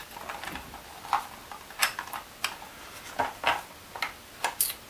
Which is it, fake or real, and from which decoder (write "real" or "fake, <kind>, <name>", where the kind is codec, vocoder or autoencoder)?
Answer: real